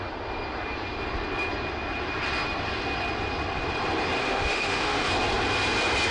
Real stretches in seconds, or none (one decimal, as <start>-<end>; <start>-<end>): 0.0-4.2; 5.1-6.1